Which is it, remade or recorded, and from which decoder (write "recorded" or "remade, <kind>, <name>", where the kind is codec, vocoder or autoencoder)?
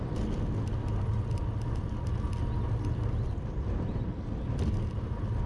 recorded